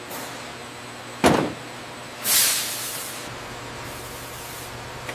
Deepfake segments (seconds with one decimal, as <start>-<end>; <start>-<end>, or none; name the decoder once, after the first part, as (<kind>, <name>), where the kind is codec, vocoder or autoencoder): none